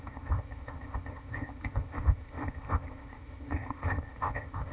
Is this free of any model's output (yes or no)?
no